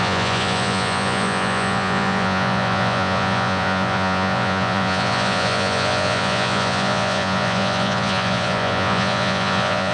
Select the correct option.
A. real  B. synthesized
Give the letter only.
B